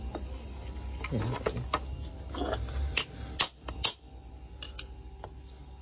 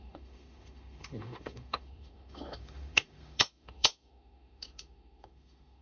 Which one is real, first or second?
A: first